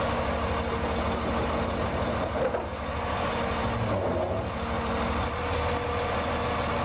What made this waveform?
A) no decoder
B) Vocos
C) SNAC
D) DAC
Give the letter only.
A